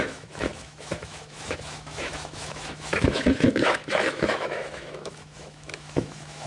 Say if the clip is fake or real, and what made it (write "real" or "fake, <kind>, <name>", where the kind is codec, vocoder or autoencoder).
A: fake, autoencoder, DAC-VAE